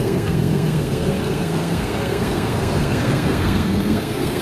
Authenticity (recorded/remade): remade